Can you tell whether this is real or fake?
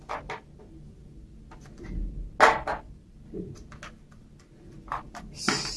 real